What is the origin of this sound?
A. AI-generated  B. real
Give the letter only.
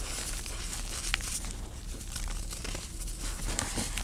B